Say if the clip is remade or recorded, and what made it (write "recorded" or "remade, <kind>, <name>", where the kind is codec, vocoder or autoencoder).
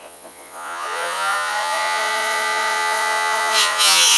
remade, vocoder, Vocos